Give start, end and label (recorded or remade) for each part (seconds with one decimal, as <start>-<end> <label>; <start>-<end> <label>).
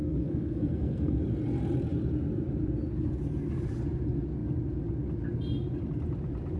0.0-1.2 remade; 1.2-6.6 recorded